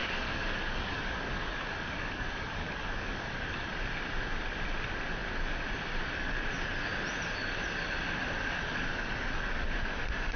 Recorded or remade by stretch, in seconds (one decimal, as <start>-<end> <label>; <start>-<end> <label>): 0.0-3.7 remade; 3.7-8.9 recorded; 8.9-9.7 remade; 9.7-10.4 recorded